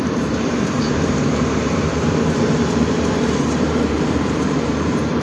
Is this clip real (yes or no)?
no